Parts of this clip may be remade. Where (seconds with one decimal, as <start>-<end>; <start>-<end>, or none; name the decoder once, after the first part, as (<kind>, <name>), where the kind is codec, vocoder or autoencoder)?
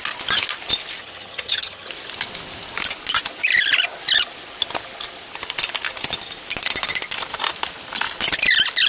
1.0-1.9 (vocoder, HiFi-GAN)